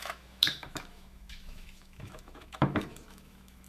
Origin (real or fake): fake